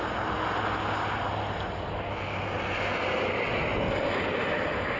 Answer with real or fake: real